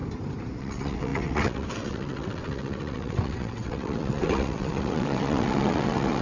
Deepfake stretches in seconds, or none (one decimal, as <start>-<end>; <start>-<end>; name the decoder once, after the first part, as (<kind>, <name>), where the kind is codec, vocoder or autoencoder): 0.6-6.2 (vocoder, WaveNeXt)